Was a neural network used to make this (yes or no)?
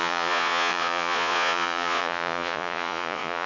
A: yes